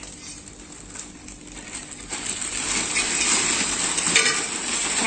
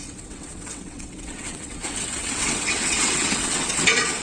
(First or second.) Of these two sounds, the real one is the first